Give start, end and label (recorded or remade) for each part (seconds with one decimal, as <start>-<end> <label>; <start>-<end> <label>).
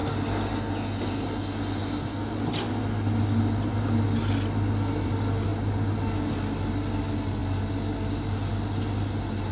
0.0-9.5 recorded